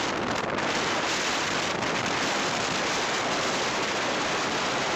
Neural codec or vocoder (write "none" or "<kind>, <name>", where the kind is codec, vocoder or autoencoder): none